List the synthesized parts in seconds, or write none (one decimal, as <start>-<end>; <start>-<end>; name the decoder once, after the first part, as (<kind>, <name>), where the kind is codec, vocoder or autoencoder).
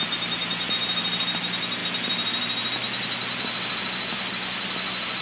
none